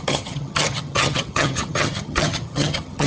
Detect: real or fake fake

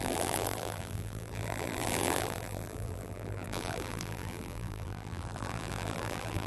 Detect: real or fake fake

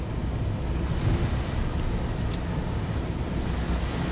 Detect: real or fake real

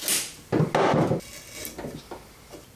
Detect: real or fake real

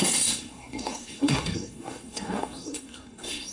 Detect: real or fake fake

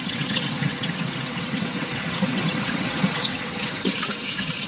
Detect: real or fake fake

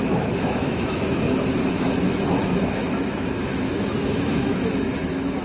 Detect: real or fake fake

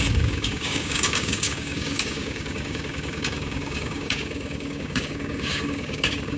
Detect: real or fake fake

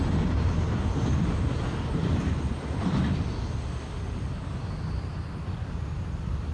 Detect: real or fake real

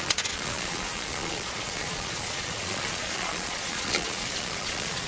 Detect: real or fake fake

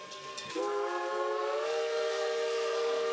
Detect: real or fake fake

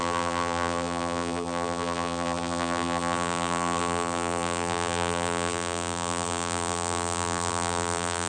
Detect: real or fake fake